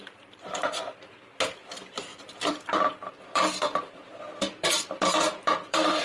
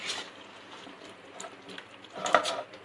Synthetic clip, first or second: first